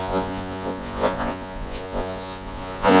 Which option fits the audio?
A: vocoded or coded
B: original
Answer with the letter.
A